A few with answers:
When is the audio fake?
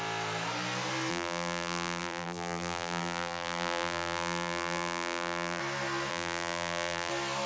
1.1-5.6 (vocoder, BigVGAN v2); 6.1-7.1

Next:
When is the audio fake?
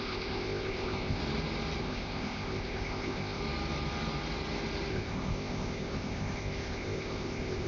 0.0-1.2 (codec, ZipCodec); 1.8-3.4; 4.9-7.7